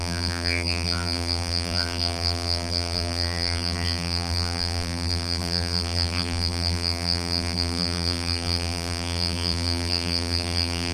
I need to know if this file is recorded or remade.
remade